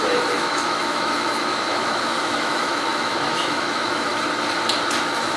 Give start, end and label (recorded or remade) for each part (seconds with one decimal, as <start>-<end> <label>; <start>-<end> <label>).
0.0-4.1 remade; 4.1-5.0 recorded; 5.0-5.4 remade